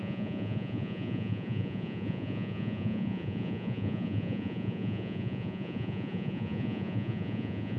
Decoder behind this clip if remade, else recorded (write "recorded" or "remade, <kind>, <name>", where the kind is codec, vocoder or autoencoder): remade, vocoder, Vocos